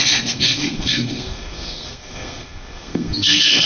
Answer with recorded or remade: remade